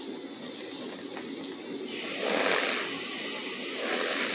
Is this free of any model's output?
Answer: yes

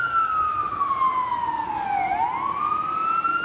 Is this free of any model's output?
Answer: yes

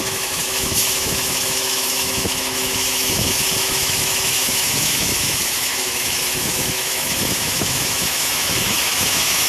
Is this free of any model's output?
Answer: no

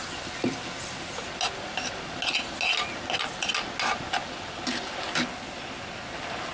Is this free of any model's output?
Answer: yes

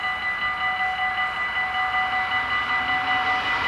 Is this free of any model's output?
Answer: yes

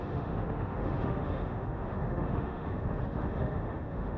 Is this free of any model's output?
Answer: no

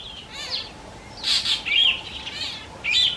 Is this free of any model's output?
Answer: yes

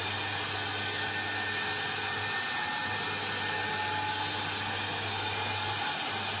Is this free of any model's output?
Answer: yes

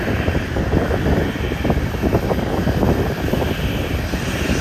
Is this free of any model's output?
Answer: yes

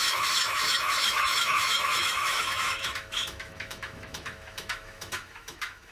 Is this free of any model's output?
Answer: no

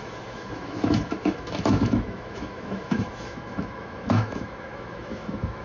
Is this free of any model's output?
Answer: no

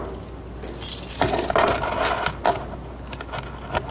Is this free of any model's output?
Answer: yes